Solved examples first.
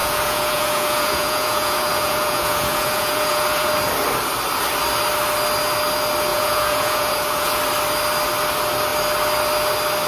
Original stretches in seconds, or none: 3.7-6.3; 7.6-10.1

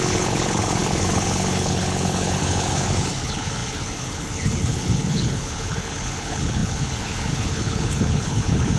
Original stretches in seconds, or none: none